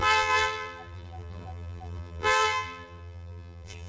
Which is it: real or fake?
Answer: fake